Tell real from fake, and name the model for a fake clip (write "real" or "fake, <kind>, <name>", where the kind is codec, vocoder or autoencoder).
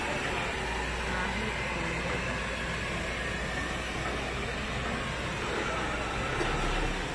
real